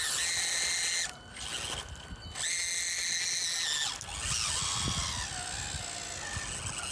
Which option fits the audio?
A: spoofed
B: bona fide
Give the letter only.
B